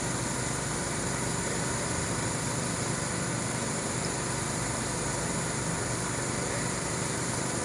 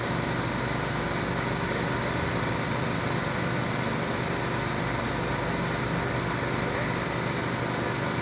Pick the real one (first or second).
second